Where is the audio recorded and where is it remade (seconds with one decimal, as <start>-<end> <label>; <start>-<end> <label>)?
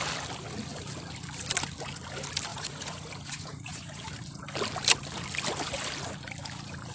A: 0.0-2.5 recorded; 2.5-4.0 remade; 4.0-6.9 recorded